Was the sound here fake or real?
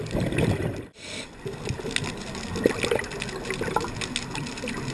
real